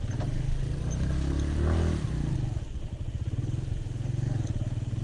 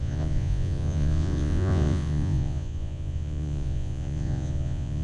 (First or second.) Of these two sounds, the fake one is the second